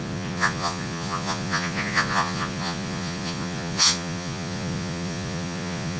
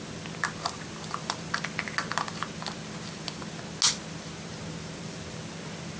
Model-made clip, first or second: first